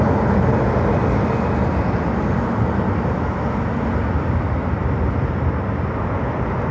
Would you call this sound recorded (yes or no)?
yes